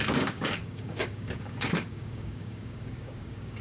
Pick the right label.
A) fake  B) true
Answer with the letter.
A